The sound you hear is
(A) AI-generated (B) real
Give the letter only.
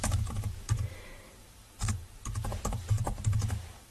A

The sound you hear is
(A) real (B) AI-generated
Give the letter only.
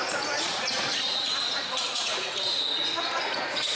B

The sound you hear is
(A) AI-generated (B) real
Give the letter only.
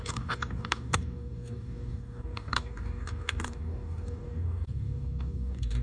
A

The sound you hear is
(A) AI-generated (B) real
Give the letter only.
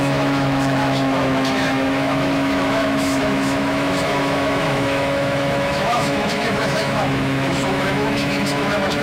A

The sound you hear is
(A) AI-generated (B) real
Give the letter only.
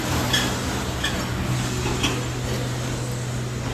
B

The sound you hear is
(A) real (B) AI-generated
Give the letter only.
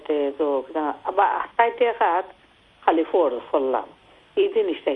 A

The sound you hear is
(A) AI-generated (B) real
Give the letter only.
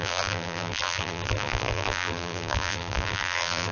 A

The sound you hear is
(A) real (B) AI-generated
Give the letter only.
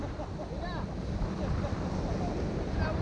A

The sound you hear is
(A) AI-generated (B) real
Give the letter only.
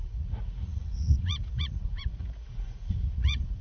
A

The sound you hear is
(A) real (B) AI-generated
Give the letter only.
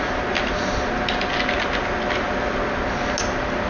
A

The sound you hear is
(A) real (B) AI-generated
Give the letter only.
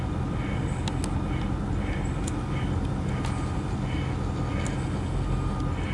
A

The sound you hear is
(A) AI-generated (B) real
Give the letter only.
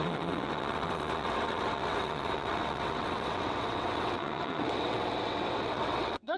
A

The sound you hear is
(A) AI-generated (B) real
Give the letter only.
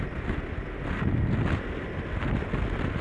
B